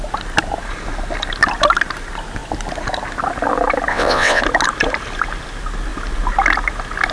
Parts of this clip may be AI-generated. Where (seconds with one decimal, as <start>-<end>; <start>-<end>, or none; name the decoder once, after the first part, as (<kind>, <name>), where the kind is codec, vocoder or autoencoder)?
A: 3.9-4.4 (vocoder, WaveNeXt)

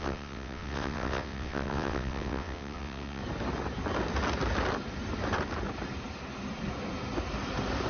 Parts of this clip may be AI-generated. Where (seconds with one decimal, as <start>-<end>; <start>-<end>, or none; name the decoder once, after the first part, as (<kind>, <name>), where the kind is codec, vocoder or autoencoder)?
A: 0.0-3.2 (vocoder, WaveNeXt)

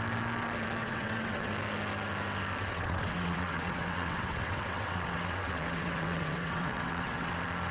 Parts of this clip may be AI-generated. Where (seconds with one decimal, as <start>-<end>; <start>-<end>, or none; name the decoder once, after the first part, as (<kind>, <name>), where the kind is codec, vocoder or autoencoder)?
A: 0.8-1.5 (vocoder, WaveNeXt); 2.7-7.3